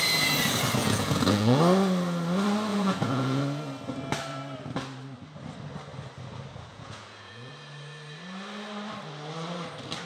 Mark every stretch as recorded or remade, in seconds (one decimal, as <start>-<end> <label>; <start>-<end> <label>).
0.0-0.8 recorded; 0.8-1.6 remade; 1.6-2.7 recorded; 2.7-3.4 remade; 3.4-6.7 recorded; 6.7-7.5 remade; 7.5-10.0 recorded